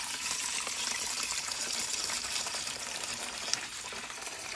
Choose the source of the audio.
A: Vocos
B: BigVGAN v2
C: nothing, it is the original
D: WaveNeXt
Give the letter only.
B